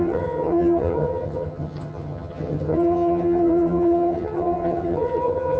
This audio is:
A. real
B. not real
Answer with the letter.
B